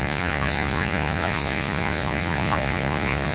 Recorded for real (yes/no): no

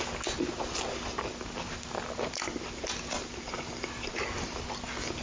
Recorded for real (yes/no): yes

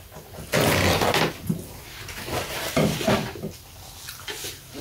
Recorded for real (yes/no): yes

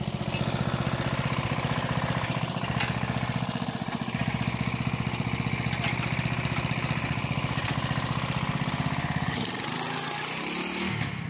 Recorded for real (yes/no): yes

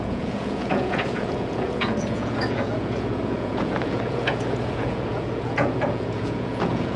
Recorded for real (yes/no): no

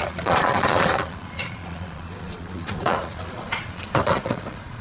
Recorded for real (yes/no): no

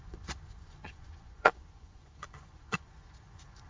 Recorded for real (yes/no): no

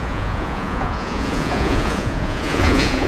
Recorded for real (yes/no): no